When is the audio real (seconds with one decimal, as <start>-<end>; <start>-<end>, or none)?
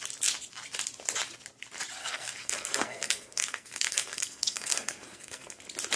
0.0-2.0; 5.6-6.0